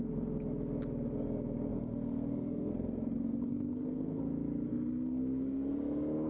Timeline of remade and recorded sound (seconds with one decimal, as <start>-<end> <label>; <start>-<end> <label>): 0.0-1.7 recorded; 1.7-4.2 remade; 4.2-4.7 recorded; 4.7-5.7 remade; 5.7-6.3 recorded